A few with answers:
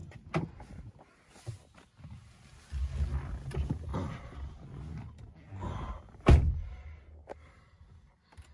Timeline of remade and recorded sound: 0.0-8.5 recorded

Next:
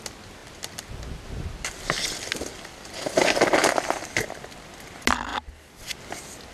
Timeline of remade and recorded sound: 0.0-6.5 recorded

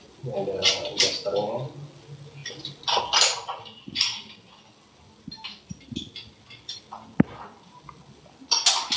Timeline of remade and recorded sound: 0.0-9.0 recorded

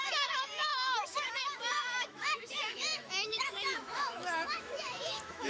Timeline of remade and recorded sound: 0.0-5.5 remade

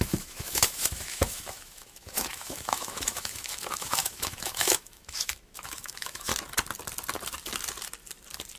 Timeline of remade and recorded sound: 0.0-6.3 remade; 6.3-8.6 recorded